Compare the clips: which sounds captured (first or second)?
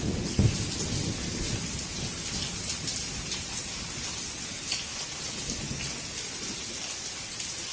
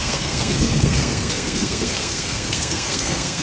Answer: first